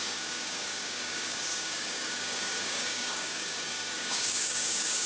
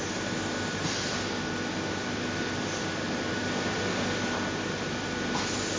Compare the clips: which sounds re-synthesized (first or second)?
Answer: first